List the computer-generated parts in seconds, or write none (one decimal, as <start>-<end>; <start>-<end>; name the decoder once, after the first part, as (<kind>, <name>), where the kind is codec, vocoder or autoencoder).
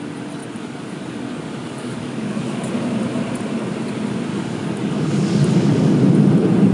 0.4-2.7 (codec, DAC); 4.3-5.9